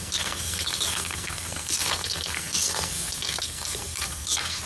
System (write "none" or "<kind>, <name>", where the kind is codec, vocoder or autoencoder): codec, SNAC